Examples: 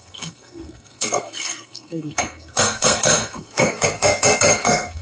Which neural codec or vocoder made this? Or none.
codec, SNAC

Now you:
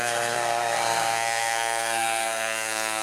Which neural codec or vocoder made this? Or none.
codec, SNAC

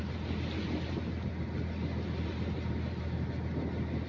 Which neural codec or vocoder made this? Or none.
none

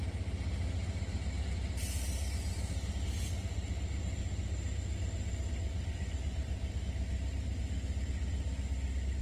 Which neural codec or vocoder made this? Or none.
none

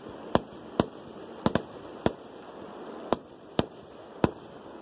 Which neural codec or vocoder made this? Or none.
none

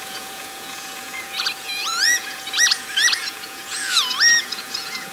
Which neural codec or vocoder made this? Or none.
vocoder, Vocos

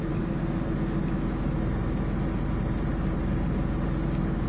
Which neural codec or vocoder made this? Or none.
none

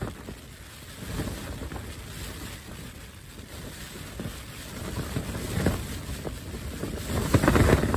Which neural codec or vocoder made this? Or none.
none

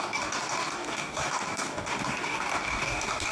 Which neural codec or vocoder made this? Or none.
codec, DAC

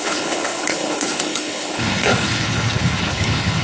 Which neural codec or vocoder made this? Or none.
codec, HILCodec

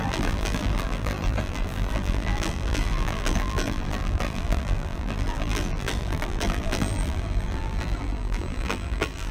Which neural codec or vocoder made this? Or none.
vocoder, BigVGAN v2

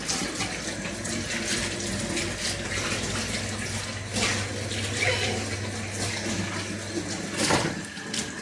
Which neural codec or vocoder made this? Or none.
none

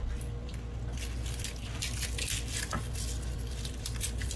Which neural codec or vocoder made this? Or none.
none